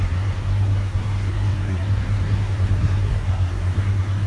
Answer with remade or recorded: remade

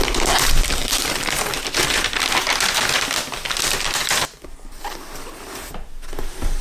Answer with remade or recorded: recorded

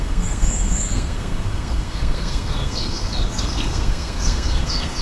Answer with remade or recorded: remade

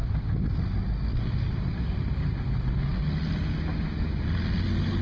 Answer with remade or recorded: recorded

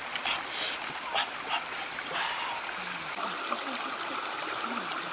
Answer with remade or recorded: recorded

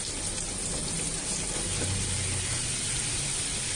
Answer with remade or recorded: recorded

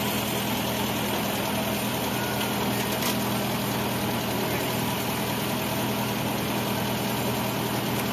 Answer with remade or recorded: recorded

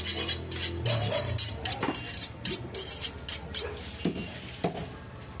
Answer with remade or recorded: recorded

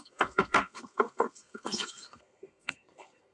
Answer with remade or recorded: remade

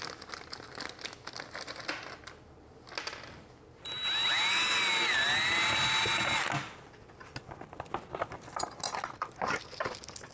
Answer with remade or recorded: recorded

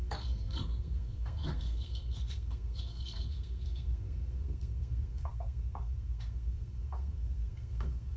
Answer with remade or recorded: remade